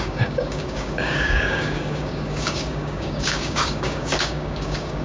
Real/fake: fake